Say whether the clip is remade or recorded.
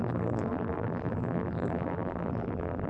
remade